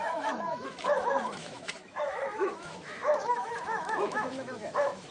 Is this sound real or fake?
fake